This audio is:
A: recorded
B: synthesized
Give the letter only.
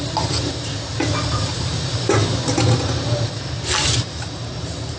B